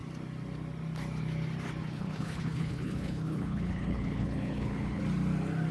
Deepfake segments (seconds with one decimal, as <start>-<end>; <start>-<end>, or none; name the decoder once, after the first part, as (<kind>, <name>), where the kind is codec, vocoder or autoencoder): 1.8-5.0 (codec, HILCodec)